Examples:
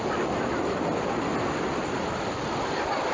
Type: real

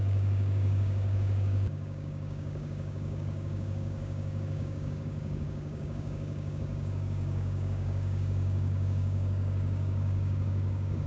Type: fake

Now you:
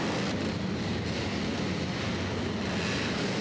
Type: real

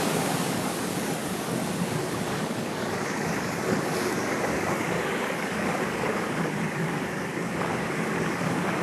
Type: fake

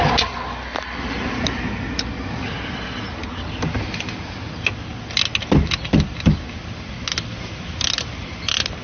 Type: real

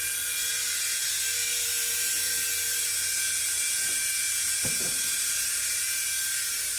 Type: real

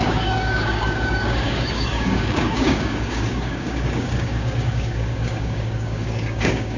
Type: fake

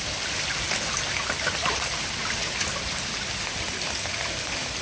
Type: real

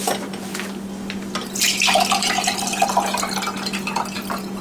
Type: real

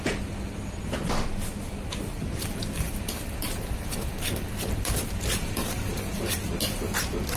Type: real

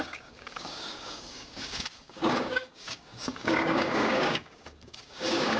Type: fake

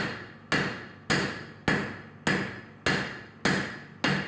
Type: real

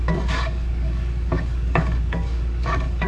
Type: fake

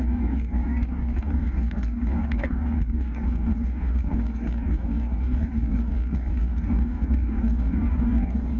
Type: fake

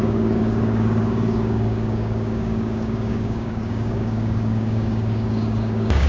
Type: fake